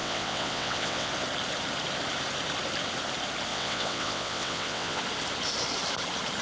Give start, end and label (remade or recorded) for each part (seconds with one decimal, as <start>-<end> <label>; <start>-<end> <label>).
0.0-1.1 remade; 1.1-3.5 recorded; 3.5-5.0 remade; 5.0-6.4 recorded